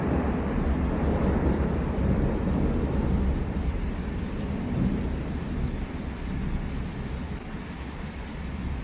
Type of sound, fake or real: real